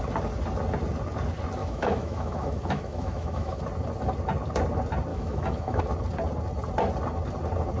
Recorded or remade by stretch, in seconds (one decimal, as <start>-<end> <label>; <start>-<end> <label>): 0.0-1.6 recorded; 1.6-3.6 remade; 3.6-5.1 recorded; 5.1-5.8 remade; 5.8-7.8 recorded